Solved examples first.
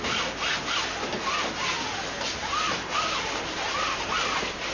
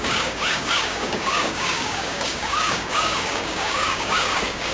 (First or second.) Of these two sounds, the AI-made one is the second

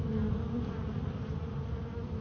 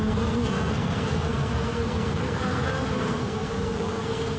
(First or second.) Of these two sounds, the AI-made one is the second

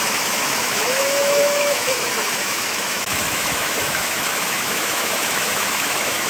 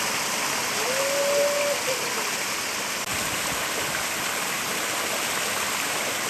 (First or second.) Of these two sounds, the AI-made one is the first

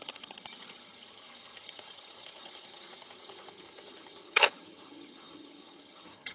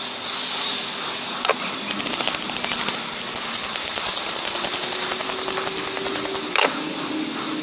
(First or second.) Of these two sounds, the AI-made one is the first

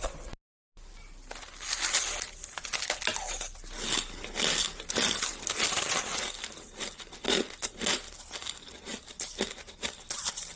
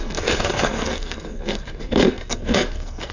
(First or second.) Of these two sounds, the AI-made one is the second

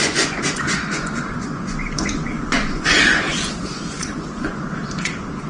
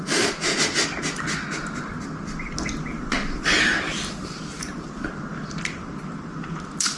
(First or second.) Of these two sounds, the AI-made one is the first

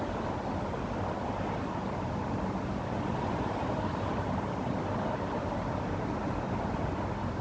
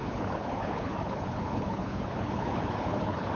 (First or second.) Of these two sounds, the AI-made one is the second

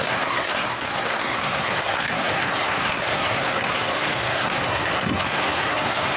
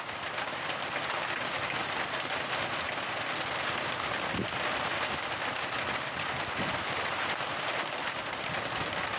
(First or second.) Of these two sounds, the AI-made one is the first